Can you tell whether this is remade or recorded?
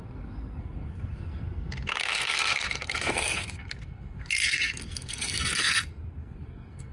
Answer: remade